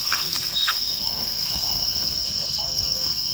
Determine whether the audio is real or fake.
fake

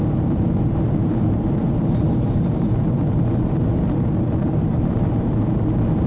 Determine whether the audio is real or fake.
fake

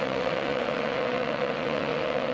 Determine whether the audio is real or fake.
fake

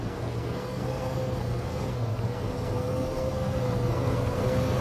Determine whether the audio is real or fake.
fake